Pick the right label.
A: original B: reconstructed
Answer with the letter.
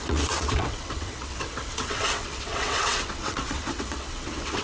B